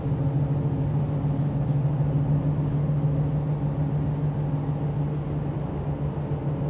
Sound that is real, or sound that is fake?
real